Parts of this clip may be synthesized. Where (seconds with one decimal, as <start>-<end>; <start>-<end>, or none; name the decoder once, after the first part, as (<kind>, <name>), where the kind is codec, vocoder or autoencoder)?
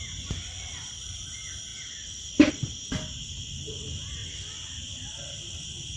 none